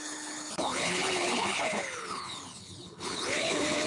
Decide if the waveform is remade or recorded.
remade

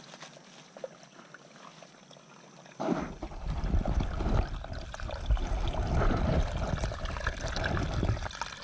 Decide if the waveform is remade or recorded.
recorded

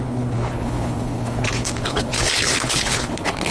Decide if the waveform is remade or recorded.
remade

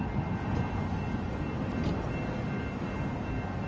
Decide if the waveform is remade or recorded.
recorded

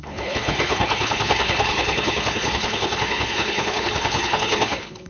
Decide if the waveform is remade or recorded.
remade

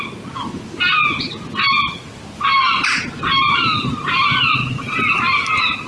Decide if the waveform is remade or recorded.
recorded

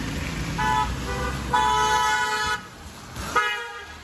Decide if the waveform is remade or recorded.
recorded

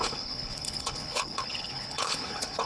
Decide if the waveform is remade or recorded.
remade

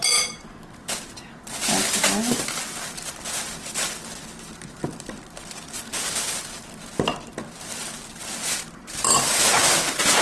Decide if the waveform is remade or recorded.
recorded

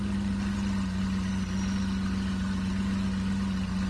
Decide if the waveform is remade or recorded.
recorded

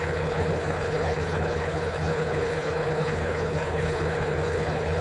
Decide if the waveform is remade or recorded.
remade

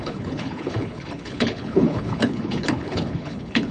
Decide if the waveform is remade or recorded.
remade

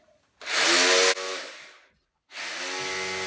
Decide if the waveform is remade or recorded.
recorded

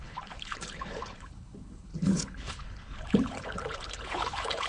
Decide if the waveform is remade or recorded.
remade